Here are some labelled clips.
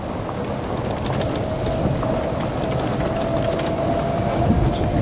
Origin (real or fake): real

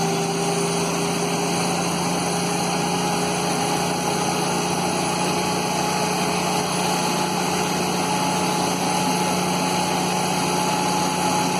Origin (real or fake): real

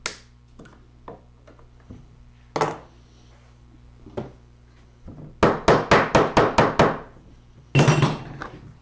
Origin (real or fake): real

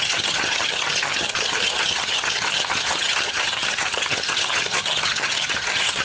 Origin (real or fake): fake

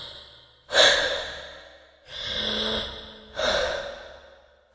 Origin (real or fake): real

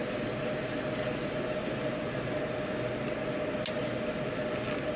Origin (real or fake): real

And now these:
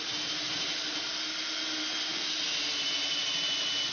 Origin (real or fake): real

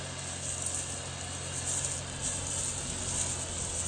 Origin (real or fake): real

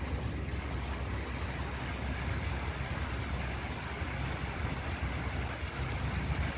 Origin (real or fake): real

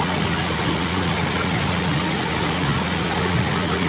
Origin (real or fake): fake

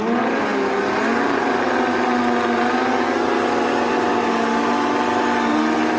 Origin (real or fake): real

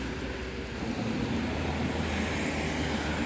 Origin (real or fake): real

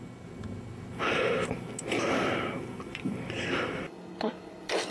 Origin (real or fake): real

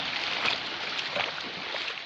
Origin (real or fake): real